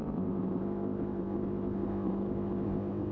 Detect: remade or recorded remade